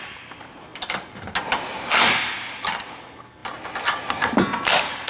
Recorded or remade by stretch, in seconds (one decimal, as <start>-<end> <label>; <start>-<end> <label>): 0.0-5.1 recorded